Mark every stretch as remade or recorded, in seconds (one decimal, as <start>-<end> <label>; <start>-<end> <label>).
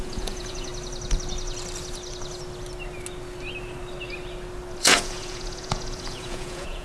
0.0-0.7 remade; 0.7-4.8 recorded; 4.8-6.8 remade